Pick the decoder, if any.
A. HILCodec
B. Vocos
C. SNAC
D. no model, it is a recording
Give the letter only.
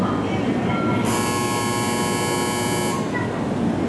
D